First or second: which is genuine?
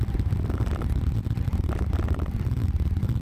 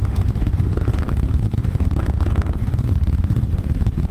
first